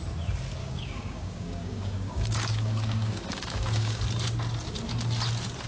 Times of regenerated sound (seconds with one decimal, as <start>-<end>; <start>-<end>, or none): 0.6-4.0